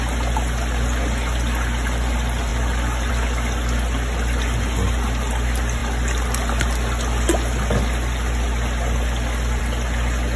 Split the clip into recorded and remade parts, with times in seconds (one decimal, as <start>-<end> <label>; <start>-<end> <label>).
0.0-10.4 recorded